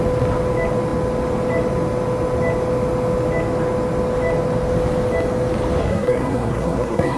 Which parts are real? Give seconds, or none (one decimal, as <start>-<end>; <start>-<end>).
0.0-5.8